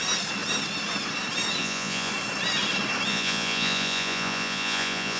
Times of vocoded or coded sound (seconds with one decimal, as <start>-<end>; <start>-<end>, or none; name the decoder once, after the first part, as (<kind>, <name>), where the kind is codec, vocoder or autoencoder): 1.6-2.1 (vocoder, Vocos); 3.1-5.2